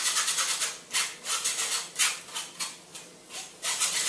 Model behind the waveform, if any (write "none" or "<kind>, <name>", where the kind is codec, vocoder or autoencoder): none